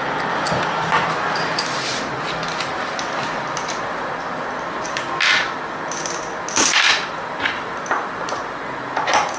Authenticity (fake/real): real